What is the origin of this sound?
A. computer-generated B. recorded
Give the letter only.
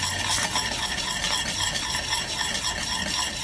B